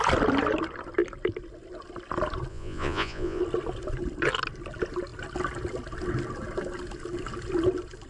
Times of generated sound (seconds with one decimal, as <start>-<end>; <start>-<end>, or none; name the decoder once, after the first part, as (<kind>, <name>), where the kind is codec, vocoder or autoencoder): 2.5-3.4 (vocoder, Vocos)